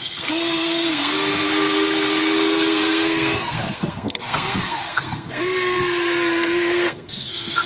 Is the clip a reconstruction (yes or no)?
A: yes